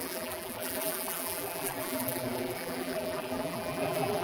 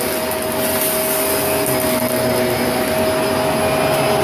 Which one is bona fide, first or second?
second